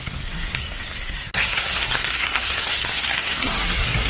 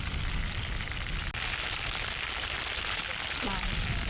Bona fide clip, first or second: second